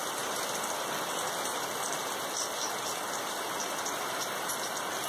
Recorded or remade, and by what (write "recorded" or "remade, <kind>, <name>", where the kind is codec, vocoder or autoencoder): recorded